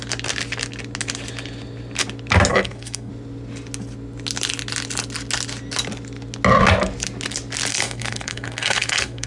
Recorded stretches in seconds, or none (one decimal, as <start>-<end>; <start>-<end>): 0.0-2.5; 3.1-7.7